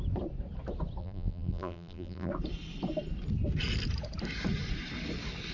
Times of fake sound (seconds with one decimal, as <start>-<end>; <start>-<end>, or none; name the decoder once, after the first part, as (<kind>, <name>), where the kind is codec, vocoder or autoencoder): 1.0-2.3 (vocoder, BigVGAN v2)